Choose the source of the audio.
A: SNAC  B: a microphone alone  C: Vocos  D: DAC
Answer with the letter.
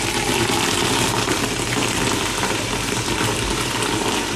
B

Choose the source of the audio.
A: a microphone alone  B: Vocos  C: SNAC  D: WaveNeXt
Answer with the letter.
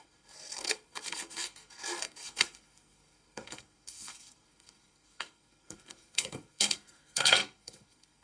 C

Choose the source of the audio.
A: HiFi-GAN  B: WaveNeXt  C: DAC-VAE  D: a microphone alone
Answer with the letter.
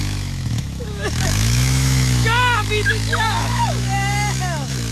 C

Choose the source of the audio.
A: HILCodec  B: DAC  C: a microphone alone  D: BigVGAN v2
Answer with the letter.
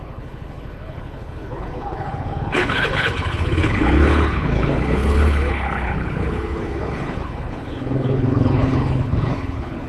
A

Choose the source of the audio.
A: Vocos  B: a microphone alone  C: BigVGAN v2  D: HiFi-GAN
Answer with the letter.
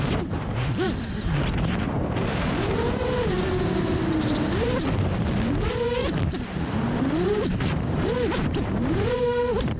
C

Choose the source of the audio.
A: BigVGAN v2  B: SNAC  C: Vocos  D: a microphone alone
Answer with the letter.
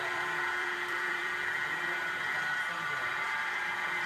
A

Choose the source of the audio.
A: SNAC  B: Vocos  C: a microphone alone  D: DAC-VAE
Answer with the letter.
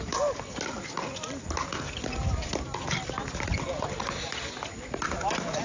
C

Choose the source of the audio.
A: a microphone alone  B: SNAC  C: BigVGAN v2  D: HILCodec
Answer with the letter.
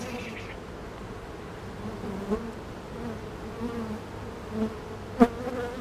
A